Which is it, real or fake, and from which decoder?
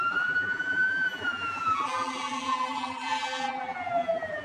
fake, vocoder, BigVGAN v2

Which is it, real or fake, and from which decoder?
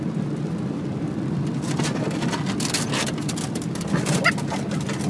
fake, vocoder, BigVGAN v2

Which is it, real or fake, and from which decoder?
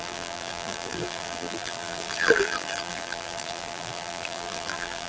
fake, vocoder, BigVGAN v2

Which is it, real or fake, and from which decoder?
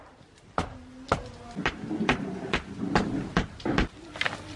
real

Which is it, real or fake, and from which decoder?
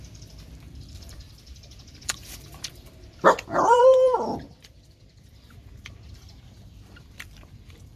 fake, vocoder, BigVGAN v2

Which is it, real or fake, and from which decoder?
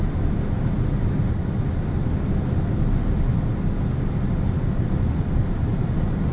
real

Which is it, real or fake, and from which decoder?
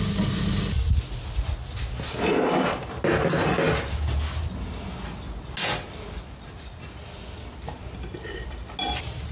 real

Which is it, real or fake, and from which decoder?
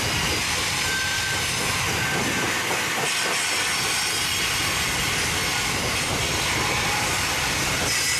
real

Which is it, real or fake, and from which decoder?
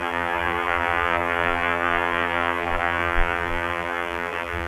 fake, vocoder, BigVGAN v2